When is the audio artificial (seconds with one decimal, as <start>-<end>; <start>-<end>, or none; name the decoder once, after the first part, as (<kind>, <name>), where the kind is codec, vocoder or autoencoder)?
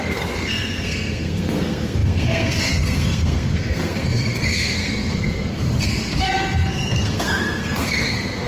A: 0.0-8.5 (codec, SNAC)